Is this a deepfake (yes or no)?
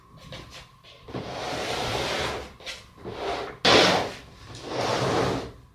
no